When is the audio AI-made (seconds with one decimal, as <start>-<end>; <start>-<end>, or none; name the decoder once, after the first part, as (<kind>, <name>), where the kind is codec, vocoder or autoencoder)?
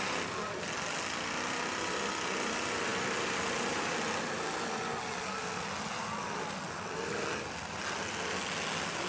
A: none